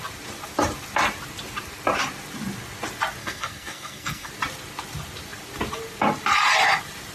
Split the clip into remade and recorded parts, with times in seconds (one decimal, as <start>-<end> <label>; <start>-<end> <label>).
0.0-3.2 recorded; 3.2-4.3 remade; 4.3-7.1 recorded